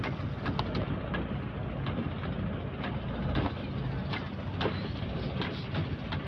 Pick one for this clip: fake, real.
real